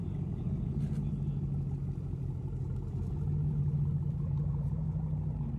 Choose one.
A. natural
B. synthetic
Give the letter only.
A